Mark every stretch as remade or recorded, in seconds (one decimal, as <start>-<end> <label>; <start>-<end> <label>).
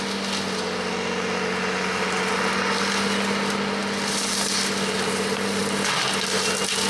0.0-6.9 recorded